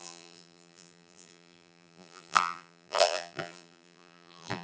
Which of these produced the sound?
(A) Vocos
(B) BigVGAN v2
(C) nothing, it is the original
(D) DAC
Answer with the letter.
B